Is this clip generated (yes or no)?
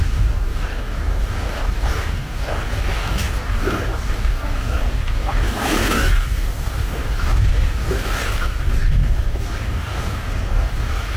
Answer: yes